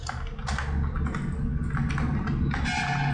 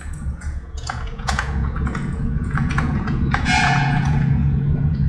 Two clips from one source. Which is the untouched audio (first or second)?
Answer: first